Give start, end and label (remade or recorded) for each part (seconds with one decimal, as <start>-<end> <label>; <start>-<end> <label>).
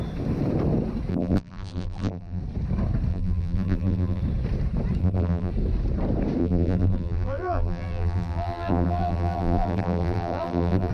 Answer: 0.0-1.1 recorded; 1.1-2.4 remade; 2.4-3.1 recorded; 3.1-4.2 remade; 4.2-5.0 recorded; 5.0-5.5 remade; 5.5-6.4 recorded; 6.4-10.9 remade